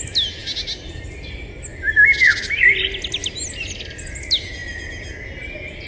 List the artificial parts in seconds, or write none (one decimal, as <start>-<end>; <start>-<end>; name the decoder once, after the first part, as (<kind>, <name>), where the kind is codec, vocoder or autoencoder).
none